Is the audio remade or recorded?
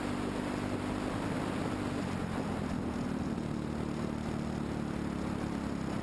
recorded